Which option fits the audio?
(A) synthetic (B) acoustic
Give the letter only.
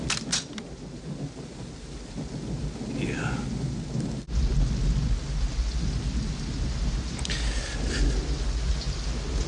B